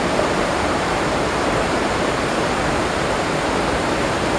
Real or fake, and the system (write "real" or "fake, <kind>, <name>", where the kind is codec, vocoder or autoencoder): fake, vocoder, BigVGAN v2